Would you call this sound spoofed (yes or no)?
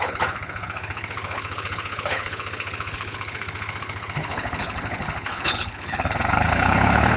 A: yes